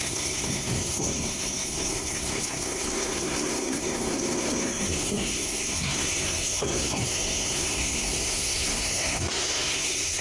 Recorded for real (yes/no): no